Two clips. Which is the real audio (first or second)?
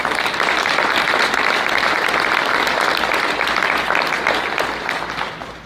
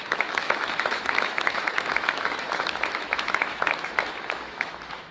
first